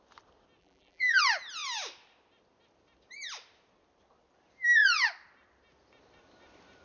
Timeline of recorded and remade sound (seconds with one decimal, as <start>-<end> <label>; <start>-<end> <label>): 0.0-0.6 recorded; 0.6-1.2 remade; 1.2-6.8 recorded